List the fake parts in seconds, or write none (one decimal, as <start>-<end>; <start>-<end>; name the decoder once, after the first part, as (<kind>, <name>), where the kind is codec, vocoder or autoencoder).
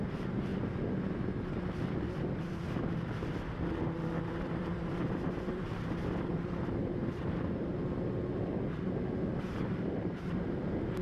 0.0-0.5 (vocoder, BigVGAN v2); 4.2-7.8; 9.4-11.0